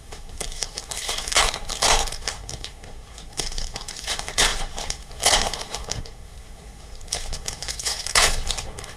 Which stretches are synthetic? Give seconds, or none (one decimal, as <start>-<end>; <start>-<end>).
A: 0.0-9.0